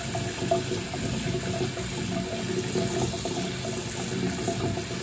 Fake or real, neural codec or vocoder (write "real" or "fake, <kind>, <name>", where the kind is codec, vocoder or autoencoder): real